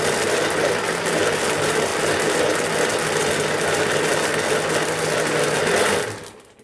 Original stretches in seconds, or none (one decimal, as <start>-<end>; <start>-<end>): 0.0-6.6